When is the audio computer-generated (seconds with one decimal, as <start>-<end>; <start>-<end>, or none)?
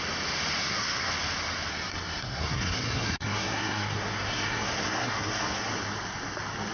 0.6-1.1; 1.7-5.7